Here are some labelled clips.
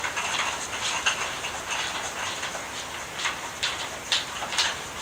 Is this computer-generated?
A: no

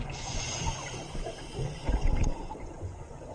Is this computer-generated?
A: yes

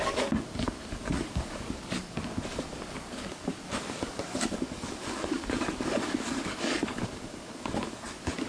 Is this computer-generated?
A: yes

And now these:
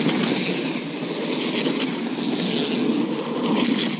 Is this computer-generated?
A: no